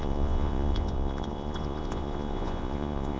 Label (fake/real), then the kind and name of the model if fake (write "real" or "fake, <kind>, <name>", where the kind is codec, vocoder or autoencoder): fake, vocoder, Vocos